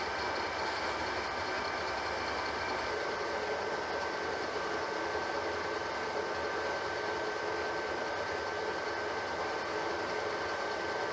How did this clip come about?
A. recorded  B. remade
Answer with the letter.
A